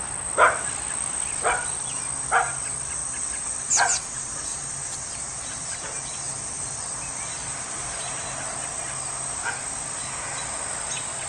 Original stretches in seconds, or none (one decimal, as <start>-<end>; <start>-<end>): 0.0-11.3